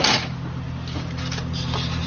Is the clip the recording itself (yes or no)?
yes